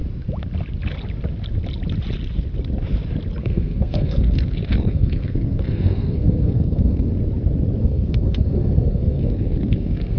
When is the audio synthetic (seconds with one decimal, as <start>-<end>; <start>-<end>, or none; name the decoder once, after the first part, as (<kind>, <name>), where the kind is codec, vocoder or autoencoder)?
3.4-7.1 (codec, SNAC); 7.8-10.2